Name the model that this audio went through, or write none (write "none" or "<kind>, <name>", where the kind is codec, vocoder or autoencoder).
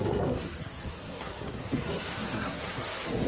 codec, SNAC